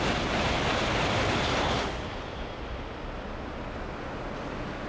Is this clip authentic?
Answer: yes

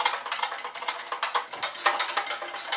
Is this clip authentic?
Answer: yes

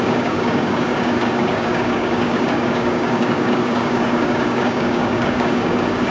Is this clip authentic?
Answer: no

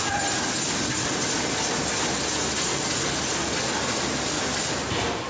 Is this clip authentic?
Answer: yes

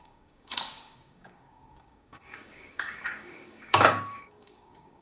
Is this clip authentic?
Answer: no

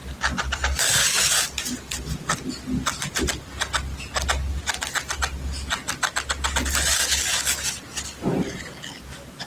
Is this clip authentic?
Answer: yes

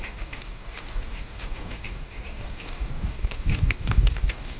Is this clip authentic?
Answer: no